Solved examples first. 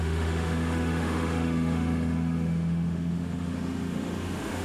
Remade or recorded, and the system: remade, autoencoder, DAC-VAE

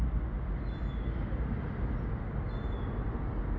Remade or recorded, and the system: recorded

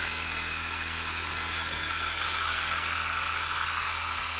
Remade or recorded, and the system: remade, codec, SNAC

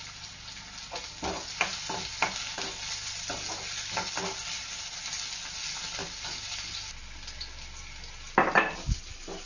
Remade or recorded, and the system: recorded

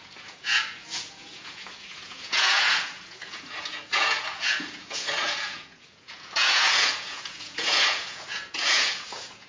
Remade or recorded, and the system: remade, vocoder, Vocos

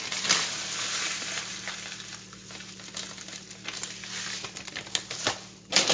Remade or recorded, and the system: recorded